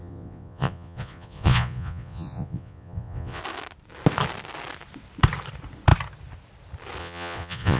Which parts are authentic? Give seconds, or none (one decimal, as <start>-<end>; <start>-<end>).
3.4-7.0